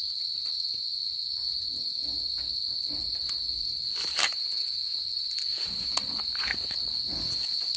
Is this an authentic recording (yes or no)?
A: no